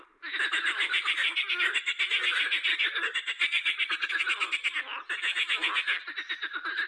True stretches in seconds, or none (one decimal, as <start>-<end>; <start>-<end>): 0.0-1.2; 2.0-2.7; 4.1-6.9